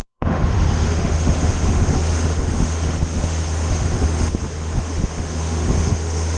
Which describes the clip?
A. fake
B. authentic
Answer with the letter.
A